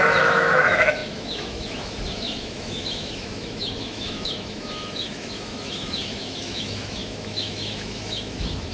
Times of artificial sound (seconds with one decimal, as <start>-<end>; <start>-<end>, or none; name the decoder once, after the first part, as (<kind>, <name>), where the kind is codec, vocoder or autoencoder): 0.0-8.7 (autoencoder, DAC-VAE)